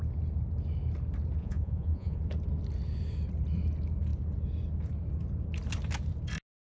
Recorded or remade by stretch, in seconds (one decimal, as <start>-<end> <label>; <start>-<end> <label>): 0.0-1.4 recorded; 1.4-2.2 remade; 2.2-6.8 recorded